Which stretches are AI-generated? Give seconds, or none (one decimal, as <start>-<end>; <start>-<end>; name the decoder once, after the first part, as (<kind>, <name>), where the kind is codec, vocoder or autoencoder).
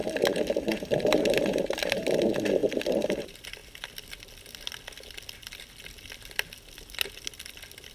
0.7-2.0 (vocoder, BigVGAN v2); 2.6-3.2